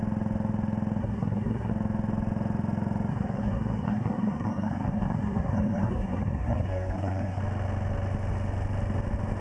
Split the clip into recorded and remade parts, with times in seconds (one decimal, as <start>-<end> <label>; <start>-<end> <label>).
0.0-1.0 recorded; 1.0-1.7 remade; 1.7-3.1 recorded; 3.1-7.4 remade; 7.4-9.4 recorded